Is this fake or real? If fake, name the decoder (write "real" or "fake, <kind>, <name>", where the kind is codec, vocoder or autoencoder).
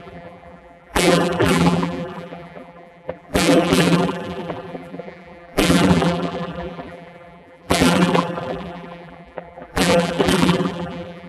fake, vocoder, BigVGAN v2